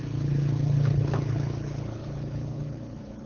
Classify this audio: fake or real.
fake